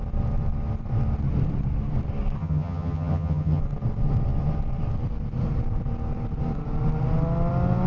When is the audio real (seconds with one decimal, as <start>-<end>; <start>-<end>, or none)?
0.0-2.4; 3.6-7.9